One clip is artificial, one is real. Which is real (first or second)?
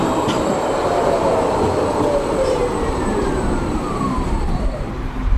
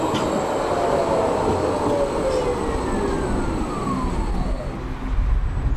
second